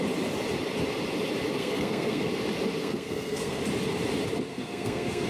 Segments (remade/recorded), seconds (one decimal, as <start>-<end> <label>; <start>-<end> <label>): 0.0-1.6 recorded; 1.6-2.3 remade; 2.3-2.8 recorded; 2.8-3.6 remade; 3.6-4.5 recorded; 4.5-5.3 remade